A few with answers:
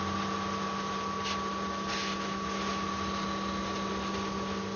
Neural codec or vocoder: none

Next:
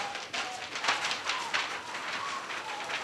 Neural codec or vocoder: none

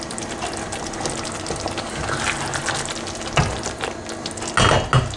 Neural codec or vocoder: none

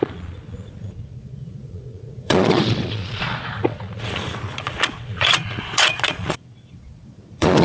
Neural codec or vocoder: vocoder, Vocos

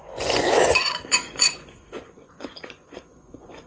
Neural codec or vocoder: vocoder, Vocos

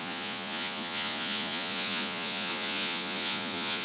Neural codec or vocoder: vocoder, Vocos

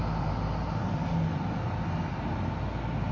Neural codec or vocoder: none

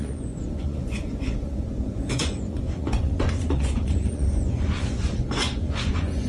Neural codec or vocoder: vocoder, Vocos